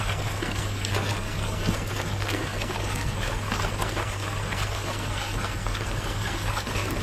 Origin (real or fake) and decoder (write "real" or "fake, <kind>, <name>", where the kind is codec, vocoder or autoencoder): fake, codec, SNAC